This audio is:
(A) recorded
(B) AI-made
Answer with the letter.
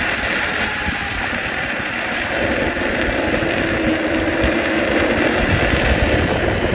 B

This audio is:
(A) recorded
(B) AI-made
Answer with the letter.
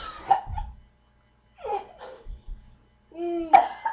A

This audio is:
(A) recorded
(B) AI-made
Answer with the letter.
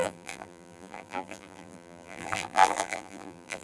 B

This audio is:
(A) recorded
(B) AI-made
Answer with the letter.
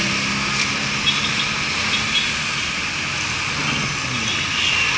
A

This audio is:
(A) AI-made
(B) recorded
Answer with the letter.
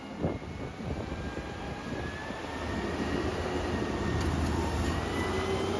B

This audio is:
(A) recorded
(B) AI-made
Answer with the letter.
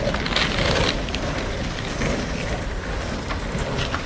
B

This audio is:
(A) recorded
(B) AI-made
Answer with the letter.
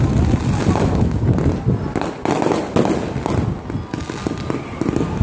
A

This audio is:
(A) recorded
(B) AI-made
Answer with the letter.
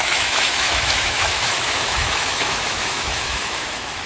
B